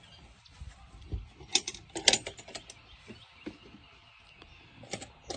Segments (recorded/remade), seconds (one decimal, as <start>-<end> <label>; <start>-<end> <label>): 0.0-5.4 recorded